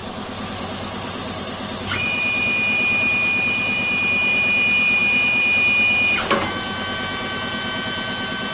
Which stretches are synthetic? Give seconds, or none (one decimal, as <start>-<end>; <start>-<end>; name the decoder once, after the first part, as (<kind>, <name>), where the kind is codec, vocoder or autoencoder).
none